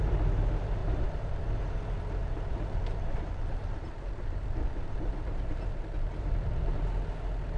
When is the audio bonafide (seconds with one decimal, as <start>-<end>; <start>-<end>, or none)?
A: 0.0-0.8; 1.5-2.2; 6.8-7.6